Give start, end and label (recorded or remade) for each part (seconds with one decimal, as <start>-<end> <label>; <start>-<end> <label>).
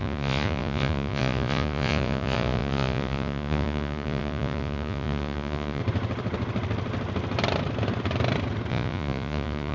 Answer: 0.0-5.8 remade; 5.8-8.7 recorded; 8.7-9.7 remade